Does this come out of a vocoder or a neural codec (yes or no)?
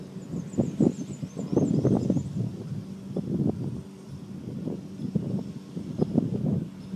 no